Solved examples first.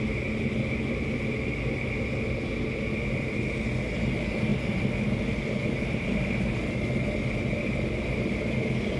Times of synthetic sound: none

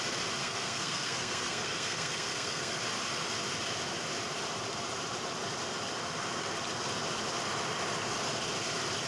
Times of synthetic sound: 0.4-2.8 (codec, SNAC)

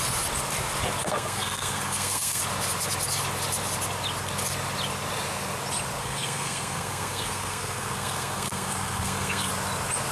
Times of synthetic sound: 1.0-2.4 (codec, SNAC); 6.0-9.5

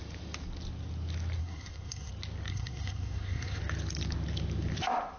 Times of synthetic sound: 1.4-2.1 (codec, SNAC); 2.5-3.6